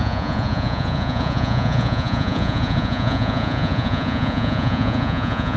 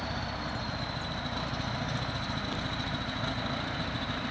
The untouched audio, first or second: second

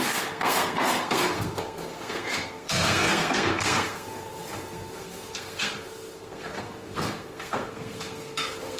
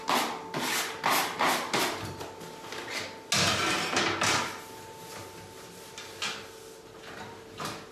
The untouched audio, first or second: second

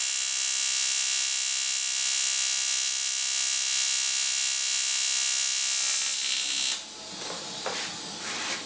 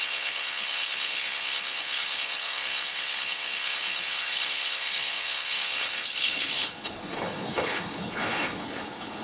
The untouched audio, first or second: first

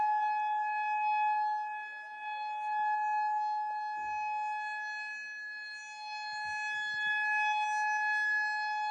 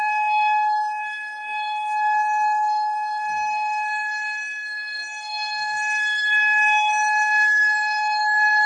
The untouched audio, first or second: first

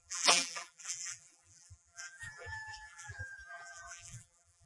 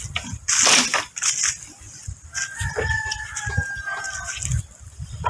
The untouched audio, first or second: second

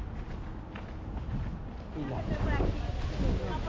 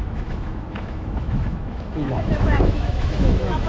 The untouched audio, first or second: first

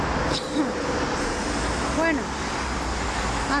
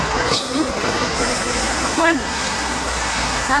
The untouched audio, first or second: first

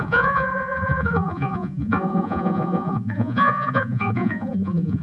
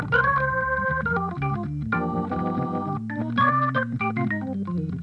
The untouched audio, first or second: second